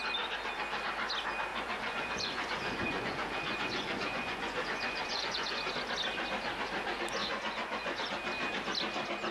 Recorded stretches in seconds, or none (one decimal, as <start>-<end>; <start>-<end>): 0.0-1.5; 5.7-7.2; 8.0-9.3